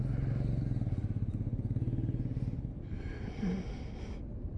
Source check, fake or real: real